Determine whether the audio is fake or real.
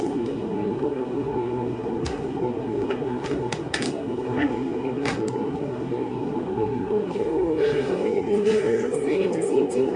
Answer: fake